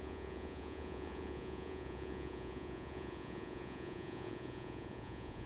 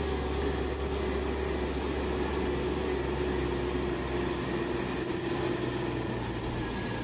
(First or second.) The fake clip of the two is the first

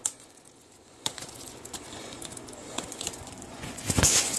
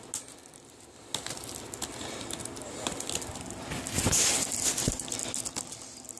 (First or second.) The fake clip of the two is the first